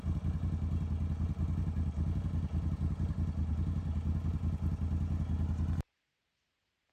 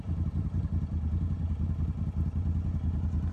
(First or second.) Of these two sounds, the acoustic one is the first